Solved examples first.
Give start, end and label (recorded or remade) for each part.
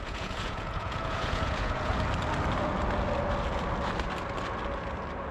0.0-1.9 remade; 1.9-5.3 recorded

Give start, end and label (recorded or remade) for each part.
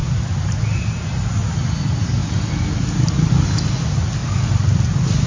0.0-5.3 recorded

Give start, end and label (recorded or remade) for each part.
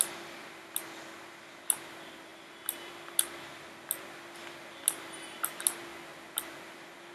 0.0-7.1 recorded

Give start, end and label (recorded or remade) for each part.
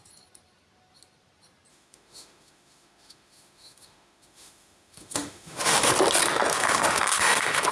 0.0-1.7 recorded; 1.7-5.9 remade; 5.9-6.5 recorded; 6.5-7.7 remade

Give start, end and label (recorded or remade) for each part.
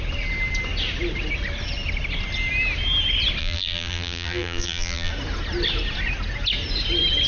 0.0-3.4 recorded; 3.4-5.1 remade; 5.1-7.3 recorded